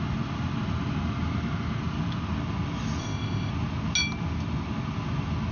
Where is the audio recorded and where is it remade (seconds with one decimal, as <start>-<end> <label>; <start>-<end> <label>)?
0.0-3.0 recorded; 3.0-3.5 remade; 3.5-5.5 recorded